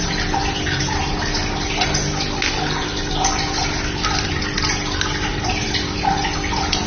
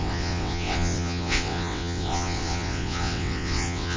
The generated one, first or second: second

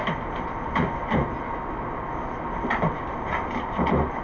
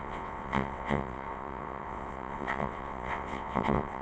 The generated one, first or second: second